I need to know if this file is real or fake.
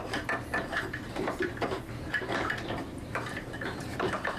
fake